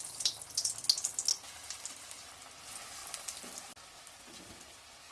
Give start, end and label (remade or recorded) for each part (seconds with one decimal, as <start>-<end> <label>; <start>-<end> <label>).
0.0-5.1 recorded